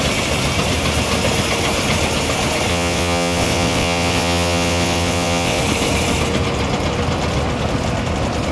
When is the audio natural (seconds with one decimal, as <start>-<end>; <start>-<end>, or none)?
0.0-2.7; 5.6-8.5